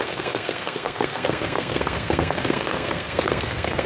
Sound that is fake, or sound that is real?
fake